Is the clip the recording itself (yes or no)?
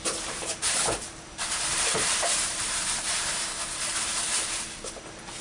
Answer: no